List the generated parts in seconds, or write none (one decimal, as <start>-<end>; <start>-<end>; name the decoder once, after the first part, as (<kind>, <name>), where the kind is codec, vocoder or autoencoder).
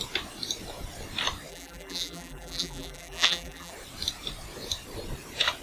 1.5-3.7 (vocoder, BigVGAN v2)